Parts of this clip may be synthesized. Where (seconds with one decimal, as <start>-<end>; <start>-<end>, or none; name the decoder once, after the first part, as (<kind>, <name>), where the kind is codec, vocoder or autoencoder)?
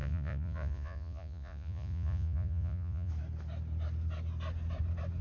0.0-3.1 (vocoder, Vocos)